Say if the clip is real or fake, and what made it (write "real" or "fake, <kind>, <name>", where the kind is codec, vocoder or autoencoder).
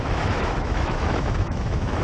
fake, autoencoder, DAC-VAE